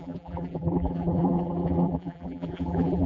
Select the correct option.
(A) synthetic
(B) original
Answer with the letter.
A